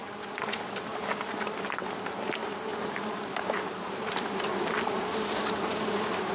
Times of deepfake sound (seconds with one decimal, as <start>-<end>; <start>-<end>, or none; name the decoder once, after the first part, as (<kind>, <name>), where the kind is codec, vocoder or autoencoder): 2.7-6.3 (vocoder, BigVGAN v2)